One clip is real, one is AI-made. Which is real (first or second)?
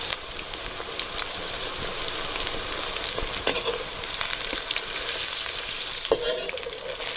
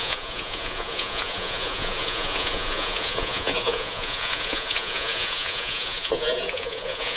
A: first